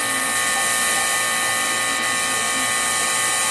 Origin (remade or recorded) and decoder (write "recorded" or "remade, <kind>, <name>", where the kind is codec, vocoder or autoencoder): recorded